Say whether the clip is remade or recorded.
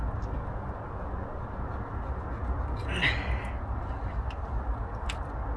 recorded